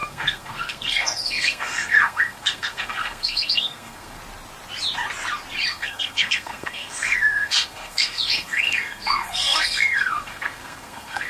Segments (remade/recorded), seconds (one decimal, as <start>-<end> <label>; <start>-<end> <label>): 0.0-4.2 remade; 4.2-5.7 recorded; 5.7-11.3 remade